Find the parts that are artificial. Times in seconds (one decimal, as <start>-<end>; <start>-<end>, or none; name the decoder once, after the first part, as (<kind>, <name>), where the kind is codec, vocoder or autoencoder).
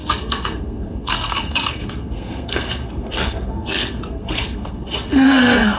0.0-5.8 (codec, SNAC)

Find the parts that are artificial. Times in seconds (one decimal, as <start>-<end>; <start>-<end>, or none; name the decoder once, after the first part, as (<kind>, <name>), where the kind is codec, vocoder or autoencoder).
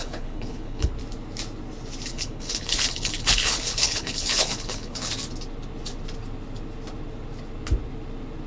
0.0-0.9 (codec, HILCodec); 2.1-5.1